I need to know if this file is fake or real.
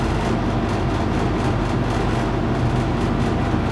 real